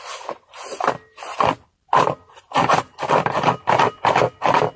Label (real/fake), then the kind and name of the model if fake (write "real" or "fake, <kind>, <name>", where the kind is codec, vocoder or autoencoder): real